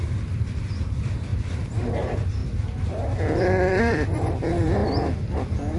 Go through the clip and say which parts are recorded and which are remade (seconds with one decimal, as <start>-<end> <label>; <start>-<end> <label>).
0.0-5.8 remade